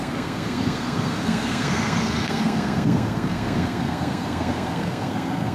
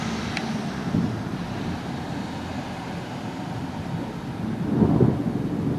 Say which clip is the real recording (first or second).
second